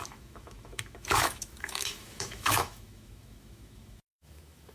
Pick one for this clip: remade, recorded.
remade